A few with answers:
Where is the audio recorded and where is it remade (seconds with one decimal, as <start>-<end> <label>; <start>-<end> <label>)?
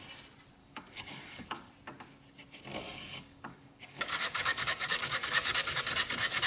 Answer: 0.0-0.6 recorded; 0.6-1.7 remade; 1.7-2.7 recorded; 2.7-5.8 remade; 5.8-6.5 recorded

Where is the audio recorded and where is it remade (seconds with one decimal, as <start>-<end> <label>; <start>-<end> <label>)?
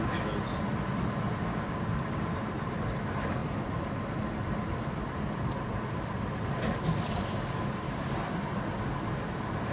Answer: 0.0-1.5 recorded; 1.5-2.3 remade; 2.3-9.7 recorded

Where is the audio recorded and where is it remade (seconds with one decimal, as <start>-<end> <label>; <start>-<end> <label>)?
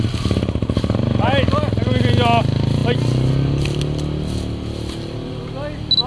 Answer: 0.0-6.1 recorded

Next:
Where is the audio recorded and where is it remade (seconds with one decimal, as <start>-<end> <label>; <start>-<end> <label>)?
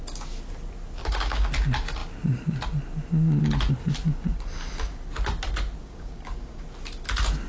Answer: 0.0-1.0 recorded; 1.0-1.5 remade; 1.5-5.8 recorded; 5.8-6.6 remade; 6.6-7.5 recorded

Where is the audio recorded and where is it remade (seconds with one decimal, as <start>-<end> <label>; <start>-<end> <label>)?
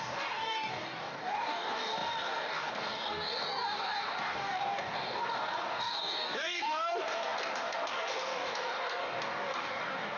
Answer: 0.0-10.2 remade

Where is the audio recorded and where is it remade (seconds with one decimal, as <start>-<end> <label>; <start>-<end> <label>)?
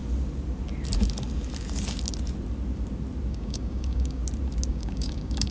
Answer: 0.0-3.3 recorded; 3.3-4.2 remade; 4.2-4.7 recorded; 4.7-5.5 remade